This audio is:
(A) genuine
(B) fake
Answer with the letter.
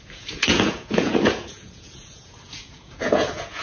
B